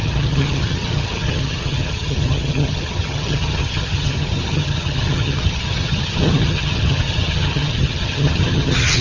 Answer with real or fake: fake